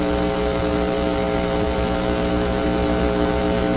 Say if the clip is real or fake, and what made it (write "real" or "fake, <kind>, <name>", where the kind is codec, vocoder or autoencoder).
fake, vocoder, BigVGAN v2